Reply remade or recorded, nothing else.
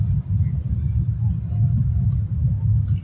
recorded